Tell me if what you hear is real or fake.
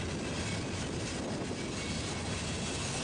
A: real